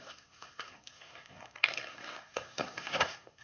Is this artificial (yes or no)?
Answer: yes